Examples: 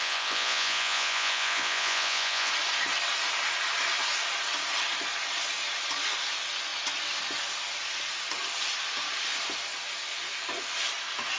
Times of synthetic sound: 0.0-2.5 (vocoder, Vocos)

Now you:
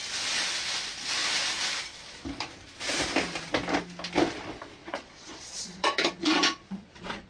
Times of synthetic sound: 4.8-7.3 (vocoder, Vocos)

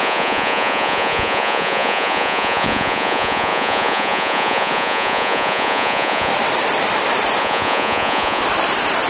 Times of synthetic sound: 0.0-6.3 (vocoder, Vocos); 7.4-8.4

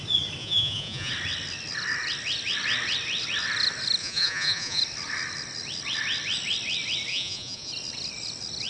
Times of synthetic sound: 0.4-1.1 (vocoder, Vocos); 4.0-4.8; 7.1-7.7

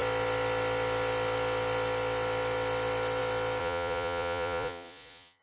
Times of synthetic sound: 3.6-5.4 (vocoder, Vocos)

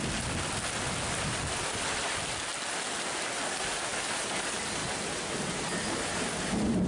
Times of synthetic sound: none

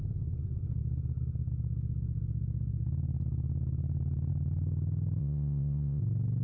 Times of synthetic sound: 5.2-6.0 (vocoder, Vocos)